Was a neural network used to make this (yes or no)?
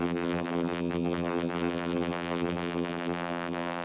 yes